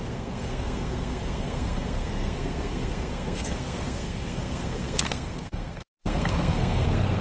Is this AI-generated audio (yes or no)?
yes